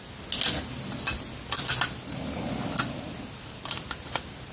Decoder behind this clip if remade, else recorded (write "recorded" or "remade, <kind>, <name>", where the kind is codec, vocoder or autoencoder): recorded